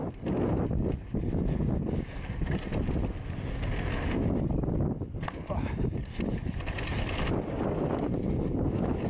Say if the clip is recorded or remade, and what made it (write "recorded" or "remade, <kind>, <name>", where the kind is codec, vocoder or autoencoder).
recorded